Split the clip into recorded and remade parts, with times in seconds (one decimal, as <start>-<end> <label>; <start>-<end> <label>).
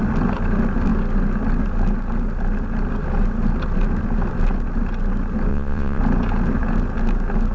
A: 0.0-5.5 recorded; 5.5-6.0 remade; 6.0-7.5 recorded